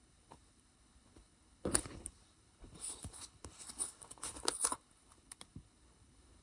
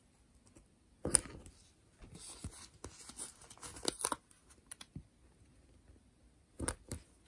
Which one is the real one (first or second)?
second